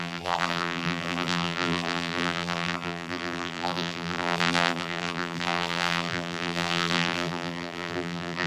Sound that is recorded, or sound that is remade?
remade